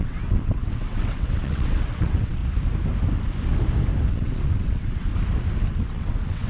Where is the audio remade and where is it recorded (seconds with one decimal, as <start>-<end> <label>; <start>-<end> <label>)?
0.0-2.4 remade; 2.4-4.1 recorded; 4.1-5.1 remade; 5.1-5.7 recorded; 5.7-6.5 remade